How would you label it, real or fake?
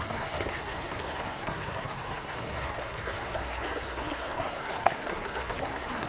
fake